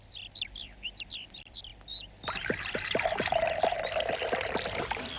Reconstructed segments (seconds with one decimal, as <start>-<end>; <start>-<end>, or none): 0.0-1.7; 4.8-5.2